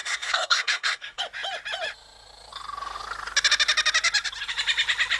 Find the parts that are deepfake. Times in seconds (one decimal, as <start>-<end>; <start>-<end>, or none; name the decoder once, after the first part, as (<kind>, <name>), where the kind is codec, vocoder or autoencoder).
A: 0.0-1.2 (codec, SNAC)